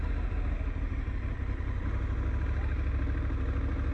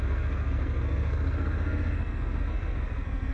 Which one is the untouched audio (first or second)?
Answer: first